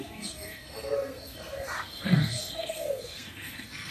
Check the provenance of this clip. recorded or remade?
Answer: remade